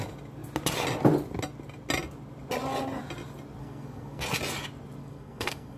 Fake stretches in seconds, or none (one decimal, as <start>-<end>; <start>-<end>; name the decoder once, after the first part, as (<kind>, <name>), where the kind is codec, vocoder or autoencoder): 3.6-4.2 (codec, SNAC); 5.0-5.8